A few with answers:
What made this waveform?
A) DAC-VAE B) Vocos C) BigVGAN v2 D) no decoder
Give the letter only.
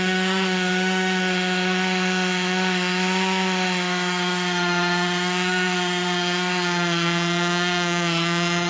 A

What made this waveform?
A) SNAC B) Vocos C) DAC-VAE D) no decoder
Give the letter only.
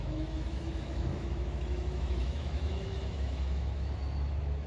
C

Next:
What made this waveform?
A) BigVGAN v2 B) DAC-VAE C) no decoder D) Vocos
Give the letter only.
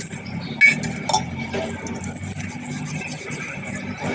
C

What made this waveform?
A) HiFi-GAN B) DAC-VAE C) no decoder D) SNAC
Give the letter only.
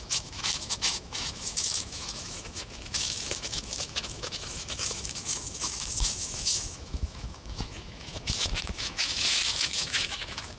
B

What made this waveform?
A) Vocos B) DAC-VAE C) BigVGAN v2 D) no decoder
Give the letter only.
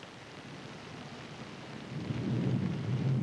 D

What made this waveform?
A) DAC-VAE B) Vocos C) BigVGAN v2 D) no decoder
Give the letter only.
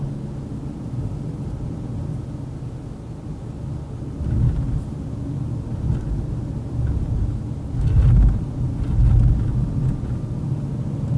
D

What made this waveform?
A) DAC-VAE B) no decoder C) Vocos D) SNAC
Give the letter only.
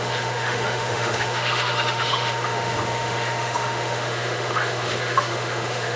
A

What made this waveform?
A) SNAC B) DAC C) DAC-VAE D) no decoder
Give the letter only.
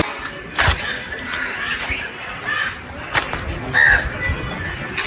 D